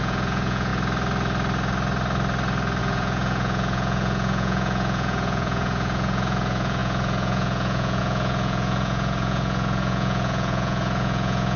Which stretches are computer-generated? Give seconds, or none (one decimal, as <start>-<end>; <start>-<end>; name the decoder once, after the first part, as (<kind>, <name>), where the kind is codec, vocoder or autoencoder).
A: 0.0-0.7 (vocoder, Vocos); 2.8-11.6